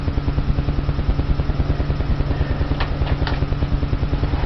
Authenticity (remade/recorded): recorded